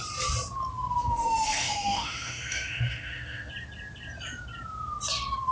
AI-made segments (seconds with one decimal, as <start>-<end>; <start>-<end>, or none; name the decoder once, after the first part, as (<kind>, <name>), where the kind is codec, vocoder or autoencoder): 1.0-3.5 (autoencoder, DAC-VAE)